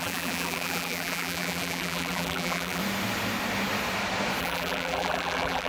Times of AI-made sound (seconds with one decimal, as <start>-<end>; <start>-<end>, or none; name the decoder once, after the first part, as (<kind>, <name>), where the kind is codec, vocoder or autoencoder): 0.0-2.8 (vocoder, BigVGAN v2); 4.4-5.7